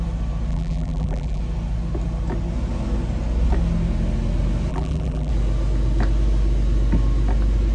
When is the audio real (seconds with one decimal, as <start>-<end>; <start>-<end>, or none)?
0.0-0.5; 1.4-4.7; 5.3-7.7